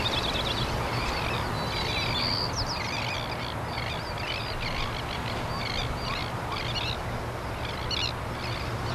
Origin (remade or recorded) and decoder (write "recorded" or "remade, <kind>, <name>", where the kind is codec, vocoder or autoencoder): recorded